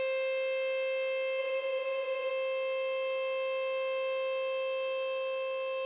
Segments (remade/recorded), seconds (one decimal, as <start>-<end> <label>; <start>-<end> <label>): 0.0-1.4 recorded; 1.4-2.3 remade; 2.3-5.9 recorded